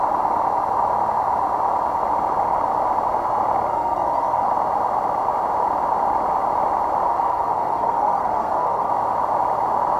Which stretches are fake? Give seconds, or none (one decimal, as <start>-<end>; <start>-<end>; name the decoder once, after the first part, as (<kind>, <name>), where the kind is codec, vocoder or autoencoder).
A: 3.7-4.5 (codec, SNAC); 7.1-8.9